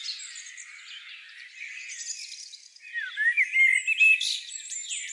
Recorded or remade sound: recorded